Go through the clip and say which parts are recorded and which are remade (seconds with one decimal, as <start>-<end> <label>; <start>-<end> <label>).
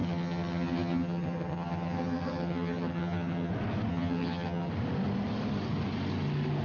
0.0-3.5 remade; 3.5-3.9 recorded; 3.9-4.7 remade; 4.7-6.6 recorded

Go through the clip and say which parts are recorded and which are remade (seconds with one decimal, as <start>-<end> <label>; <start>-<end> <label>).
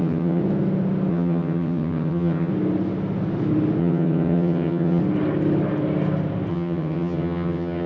0.0-0.4 remade; 0.4-1.1 recorded; 1.1-2.5 remade; 2.5-3.8 recorded; 3.8-5.0 remade; 5.0-6.5 recorded; 6.5-7.9 remade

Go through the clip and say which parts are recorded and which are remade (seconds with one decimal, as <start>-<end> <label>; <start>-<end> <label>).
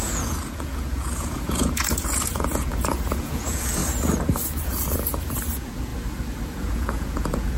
0.0-3.8 remade; 3.8-4.6 recorded; 4.6-5.9 remade; 5.9-6.5 recorded; 6.5-7.6 remade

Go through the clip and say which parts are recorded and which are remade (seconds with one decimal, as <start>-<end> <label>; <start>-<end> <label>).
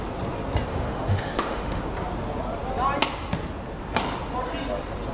0.0-0.7 recorded; 0.7-1.8 remade; 1.8-5.1 recorded